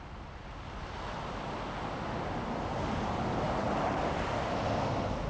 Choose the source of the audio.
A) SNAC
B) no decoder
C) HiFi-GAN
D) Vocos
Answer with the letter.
B